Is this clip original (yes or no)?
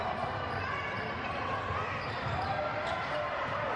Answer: yes